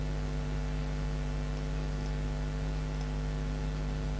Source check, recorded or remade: recorded